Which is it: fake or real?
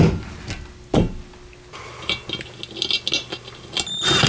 real